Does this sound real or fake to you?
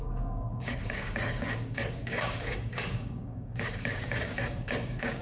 fake